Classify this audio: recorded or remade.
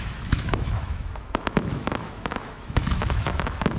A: remade